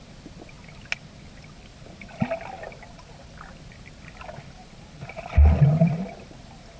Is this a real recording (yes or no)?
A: yes